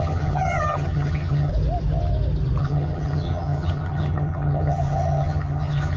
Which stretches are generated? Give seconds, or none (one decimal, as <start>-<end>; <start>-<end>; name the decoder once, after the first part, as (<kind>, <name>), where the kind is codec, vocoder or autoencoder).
0.0-1.5 (vocoder, HiFi-GAN); 2.6-6.0